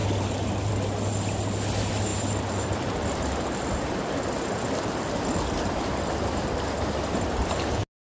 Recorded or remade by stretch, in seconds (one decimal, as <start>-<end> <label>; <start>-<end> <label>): 0.0-2.1 recorded; 2.1-6.0 remade; 6.0-8.1 recorded